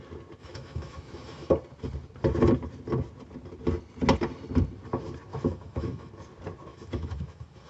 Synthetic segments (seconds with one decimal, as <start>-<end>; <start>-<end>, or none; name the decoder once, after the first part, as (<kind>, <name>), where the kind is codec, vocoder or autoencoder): 0.4-1.5 (autoencoder, DAC-VAE); 5.3-6.1; 6.7-7.7